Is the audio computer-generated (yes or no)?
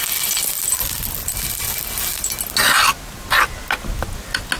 no